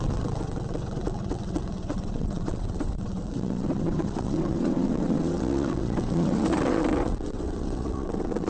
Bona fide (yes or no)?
no